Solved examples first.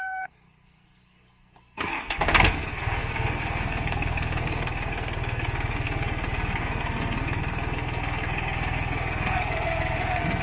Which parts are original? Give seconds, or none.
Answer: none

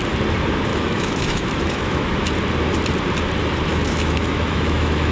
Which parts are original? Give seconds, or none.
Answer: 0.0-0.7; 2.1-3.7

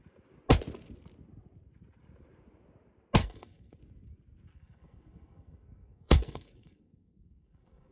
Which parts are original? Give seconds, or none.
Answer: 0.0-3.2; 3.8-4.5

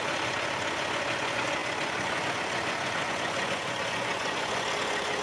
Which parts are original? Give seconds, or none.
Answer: none

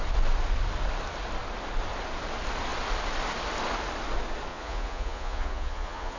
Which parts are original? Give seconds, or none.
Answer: 0.0-4.5

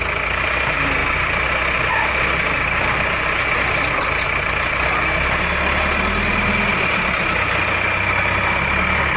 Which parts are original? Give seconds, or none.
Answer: 0.0-9.2

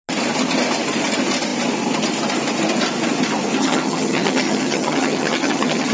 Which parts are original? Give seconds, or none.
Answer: 0.0-3.6

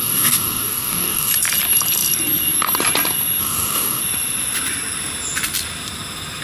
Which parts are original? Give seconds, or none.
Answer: 1.3-3.4; 4.0-6.4